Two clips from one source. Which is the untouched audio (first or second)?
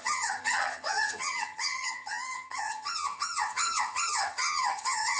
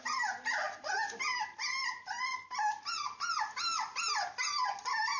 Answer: second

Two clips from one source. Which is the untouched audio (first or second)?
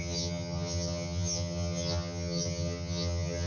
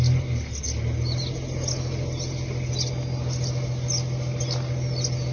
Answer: second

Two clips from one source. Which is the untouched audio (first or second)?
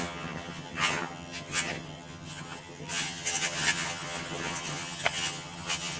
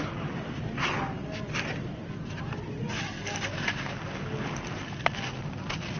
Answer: second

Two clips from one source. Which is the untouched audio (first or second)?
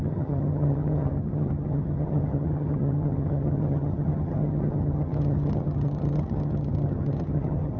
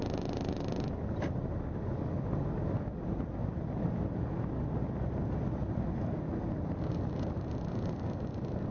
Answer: second